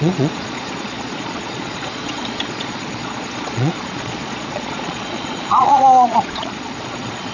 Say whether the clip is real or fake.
fake